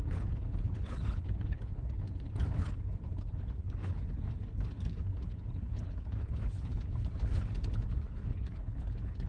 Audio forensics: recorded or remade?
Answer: remade